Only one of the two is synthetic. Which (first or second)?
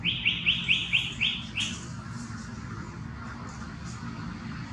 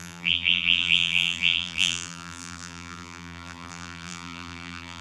second